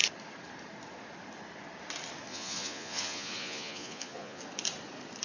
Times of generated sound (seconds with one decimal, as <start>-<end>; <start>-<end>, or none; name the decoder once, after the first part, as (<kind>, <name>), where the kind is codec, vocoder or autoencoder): 2.3-4.4 (vocoder, Vocos)